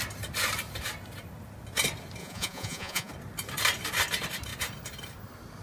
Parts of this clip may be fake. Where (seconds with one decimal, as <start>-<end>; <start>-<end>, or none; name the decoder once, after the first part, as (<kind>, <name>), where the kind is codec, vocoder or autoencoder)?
2.2-3.1 (vocoder, Vocos)